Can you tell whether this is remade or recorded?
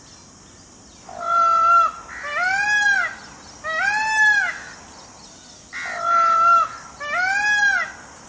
recorded